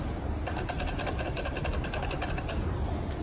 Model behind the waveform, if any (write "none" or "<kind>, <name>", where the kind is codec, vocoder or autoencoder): none